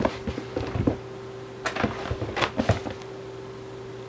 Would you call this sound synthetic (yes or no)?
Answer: no